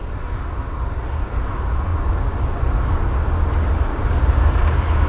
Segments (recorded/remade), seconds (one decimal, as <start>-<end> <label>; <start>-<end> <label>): 0.0-3.9 recorded; 3.9-5.1 remade